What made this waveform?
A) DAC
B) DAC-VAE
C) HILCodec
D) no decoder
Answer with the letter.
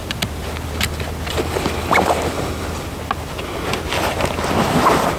D